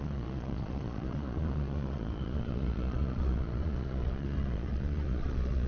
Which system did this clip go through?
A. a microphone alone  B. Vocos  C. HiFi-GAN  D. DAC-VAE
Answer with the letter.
B